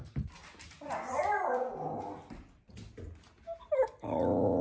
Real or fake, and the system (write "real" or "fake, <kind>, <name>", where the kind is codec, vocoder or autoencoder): real